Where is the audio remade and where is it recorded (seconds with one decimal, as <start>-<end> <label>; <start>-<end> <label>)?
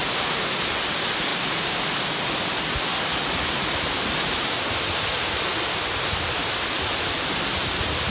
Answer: 0.0-8.1 recorded